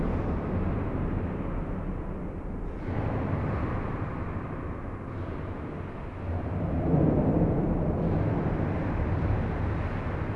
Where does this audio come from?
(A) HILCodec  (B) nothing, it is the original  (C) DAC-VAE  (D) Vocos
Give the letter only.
B